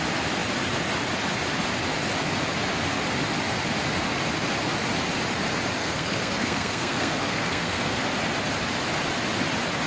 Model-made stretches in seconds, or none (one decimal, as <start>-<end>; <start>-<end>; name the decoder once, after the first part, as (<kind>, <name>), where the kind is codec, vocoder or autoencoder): 5.8-8.0 (codec, SNAC)